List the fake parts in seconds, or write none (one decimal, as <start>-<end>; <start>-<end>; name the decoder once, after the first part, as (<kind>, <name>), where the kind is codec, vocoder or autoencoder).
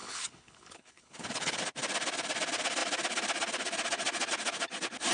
0.0-1.6 (codec, HILCodec)